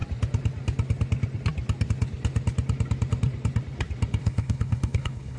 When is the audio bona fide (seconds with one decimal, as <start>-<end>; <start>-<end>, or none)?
0.0-4.2